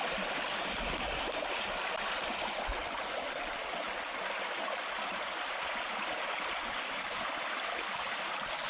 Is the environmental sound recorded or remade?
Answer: recorded